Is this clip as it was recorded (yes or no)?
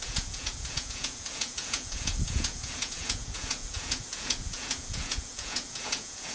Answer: no